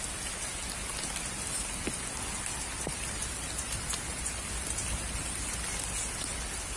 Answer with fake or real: real